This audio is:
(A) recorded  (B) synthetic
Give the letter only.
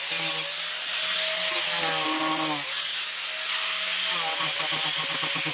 A